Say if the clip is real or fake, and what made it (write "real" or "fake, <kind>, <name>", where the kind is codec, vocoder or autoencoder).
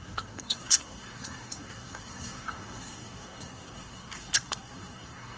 fake, codec, SNAC